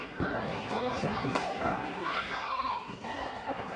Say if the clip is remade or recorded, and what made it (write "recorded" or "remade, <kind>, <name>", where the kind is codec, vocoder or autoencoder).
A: remade, codec, SNAC